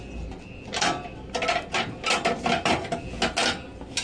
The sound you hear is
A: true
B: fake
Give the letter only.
A